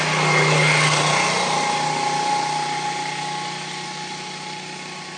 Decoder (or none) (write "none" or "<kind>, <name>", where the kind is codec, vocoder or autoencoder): none